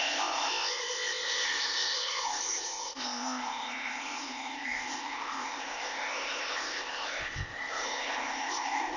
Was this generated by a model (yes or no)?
yes